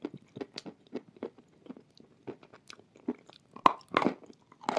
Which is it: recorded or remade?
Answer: recorded